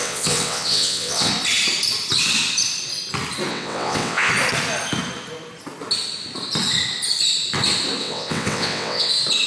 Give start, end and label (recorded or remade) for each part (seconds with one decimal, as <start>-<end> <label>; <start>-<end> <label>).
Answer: 0.0-1.3 remade; 1.3-3.5 recorded; 3.5-4.3 remade; 4.3-8.0 recorded; 8.0-9.1 remade; 9.1-9.5 recorded